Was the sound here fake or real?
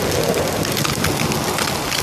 real